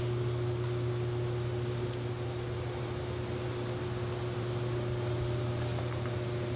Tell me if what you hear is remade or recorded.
recorded